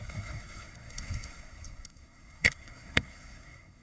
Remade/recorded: remade